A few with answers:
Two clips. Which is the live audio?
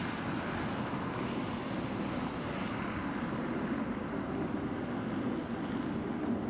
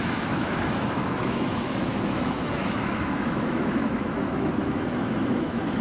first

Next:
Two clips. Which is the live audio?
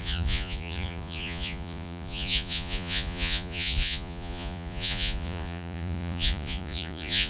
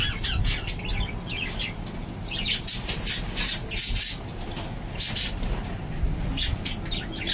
second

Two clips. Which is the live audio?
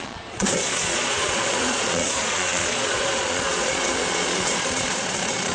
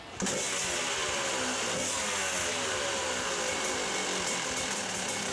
second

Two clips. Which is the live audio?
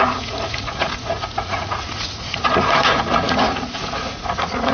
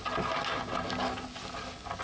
second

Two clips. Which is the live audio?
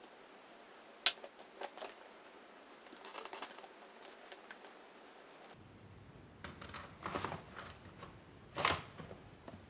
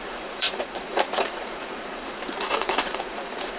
first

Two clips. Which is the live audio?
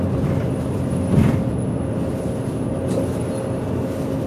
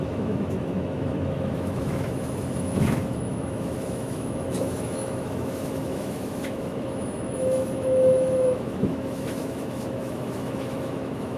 first